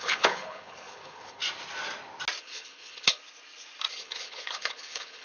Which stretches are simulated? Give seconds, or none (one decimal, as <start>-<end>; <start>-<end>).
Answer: 0.0-1.4; 2.4-3.2; 3.9-5.2